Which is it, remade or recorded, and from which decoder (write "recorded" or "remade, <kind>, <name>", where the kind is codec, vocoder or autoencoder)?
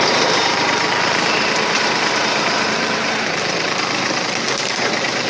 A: remade, vocoder, BigVGAN v2